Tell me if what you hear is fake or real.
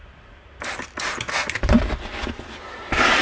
real